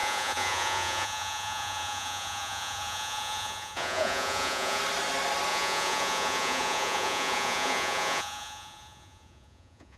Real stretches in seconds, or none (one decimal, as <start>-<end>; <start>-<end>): 4.8-5.5